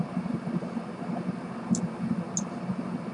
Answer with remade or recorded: recorded